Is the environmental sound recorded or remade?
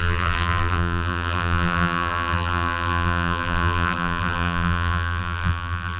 remade